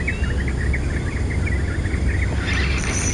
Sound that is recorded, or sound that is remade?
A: recorded